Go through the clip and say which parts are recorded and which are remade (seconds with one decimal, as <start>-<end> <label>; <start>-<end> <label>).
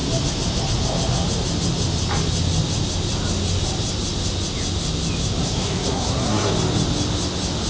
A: 0.0-5.4 recorded; 5.4-6.5 remade; 6.5-7.7 recorded